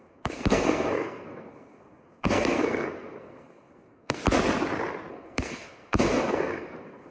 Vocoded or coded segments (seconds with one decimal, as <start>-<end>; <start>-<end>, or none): 0.0-4.2; 5.1-7.1

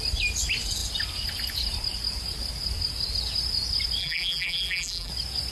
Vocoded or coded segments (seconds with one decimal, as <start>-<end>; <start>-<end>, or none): 4.0-5.1